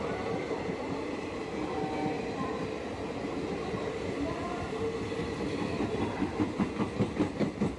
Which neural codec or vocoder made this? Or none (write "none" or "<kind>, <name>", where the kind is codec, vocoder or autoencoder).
none